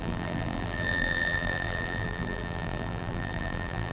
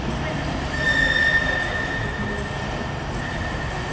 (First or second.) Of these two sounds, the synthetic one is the first